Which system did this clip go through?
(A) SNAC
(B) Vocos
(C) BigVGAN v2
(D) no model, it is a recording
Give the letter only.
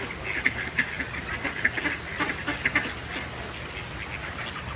D